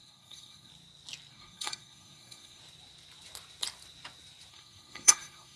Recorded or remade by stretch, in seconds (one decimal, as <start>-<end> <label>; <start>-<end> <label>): 0.0-0.7 remade; 0.7-1.3 recorded; 1.3-2.6 remade; 2.6-4.5 recorded; 4.5-5.6 remade